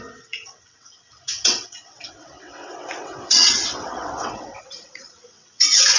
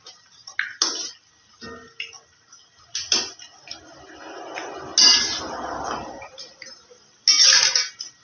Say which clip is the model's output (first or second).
first